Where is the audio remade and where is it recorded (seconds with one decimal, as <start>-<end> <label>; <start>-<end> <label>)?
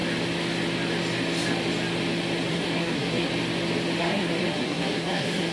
0.0-2.5 recorded; 2.5-3.3 remade; 3.3-4.0 recorded; 4.0-5.5 remade